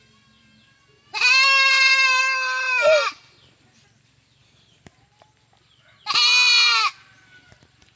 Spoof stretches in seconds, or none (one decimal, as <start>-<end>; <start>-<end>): none